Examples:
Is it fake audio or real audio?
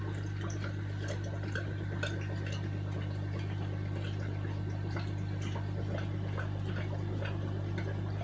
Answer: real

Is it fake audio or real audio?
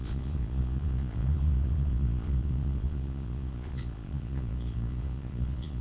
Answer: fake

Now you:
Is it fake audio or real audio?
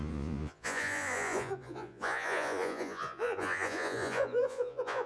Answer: fake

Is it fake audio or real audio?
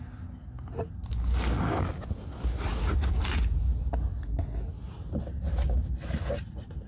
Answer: real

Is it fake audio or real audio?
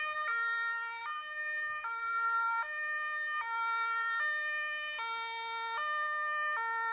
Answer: real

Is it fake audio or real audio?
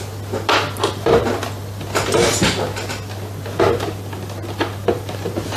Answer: real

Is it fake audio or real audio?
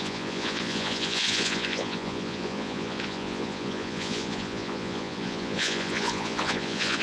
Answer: fake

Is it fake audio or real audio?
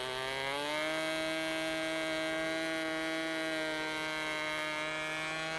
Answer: real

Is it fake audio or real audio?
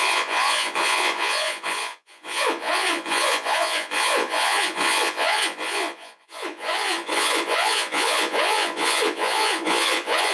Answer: fake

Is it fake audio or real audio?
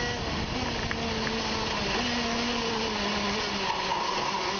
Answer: real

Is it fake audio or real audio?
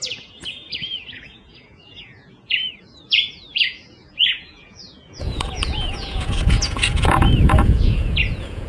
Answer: fake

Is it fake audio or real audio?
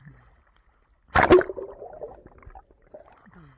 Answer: real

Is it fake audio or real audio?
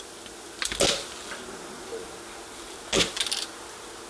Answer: real